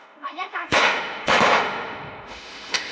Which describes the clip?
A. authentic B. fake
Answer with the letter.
B